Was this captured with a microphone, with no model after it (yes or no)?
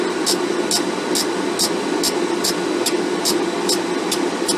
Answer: yes